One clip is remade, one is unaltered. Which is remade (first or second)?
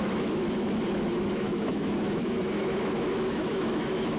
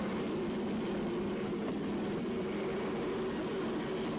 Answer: first